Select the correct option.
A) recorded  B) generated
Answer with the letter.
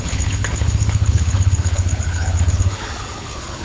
B